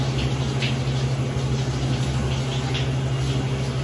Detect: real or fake real